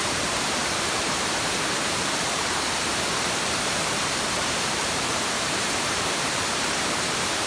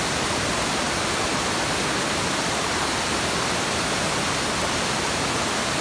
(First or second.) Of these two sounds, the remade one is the first